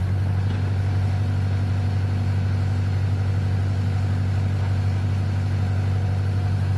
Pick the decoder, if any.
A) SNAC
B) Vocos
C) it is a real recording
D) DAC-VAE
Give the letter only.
C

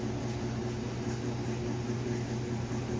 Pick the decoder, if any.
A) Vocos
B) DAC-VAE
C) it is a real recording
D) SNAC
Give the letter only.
C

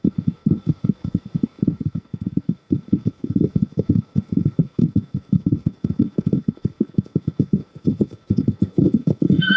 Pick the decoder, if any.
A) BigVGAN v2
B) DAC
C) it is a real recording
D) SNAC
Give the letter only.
D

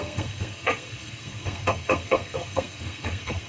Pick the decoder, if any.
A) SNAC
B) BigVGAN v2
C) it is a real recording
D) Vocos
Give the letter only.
A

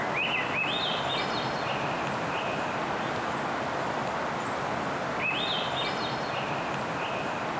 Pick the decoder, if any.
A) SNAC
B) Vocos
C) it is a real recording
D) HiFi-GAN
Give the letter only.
C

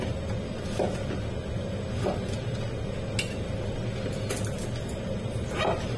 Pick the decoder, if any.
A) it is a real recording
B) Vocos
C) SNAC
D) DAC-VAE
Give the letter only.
A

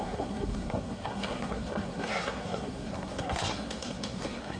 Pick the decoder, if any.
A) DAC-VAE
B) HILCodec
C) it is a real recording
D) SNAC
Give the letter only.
D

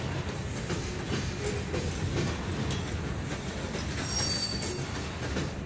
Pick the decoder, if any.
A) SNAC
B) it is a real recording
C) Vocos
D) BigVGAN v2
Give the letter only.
B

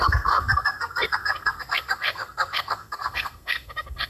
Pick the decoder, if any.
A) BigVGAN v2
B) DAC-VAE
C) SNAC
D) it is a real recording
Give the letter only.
C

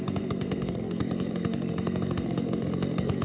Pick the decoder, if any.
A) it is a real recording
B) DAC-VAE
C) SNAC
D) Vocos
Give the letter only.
C